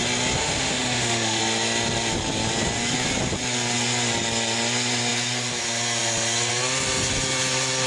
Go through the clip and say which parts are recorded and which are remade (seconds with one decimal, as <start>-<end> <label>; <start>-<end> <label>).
0.0-0.4 recorded; 0.4-1.4 remade; 1.4-7.9 recorded